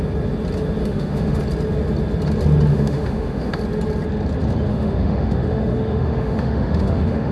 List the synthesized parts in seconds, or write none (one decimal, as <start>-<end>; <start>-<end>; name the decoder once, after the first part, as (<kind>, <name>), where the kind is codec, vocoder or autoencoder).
0.8-1.4 (autoencoder, DAC-VAE); 2.7-3.6; 4.7-7.3